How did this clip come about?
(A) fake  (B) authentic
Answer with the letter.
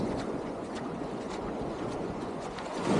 A